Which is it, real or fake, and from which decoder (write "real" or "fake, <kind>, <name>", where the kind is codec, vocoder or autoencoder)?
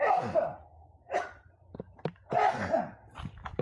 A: real